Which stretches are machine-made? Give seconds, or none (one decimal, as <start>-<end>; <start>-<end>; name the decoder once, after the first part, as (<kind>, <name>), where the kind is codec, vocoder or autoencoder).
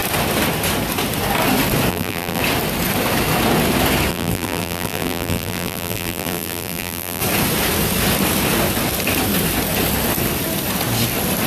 1.9-2.4 (vocoder, BigVGAN v2); 4.1-7.2